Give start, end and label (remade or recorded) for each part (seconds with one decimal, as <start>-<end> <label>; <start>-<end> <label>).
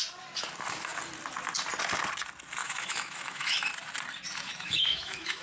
0.0-2.6 recorded; 2.6-3.7 remade; 3.7-4.5 recorded; 4.5-5.4 remade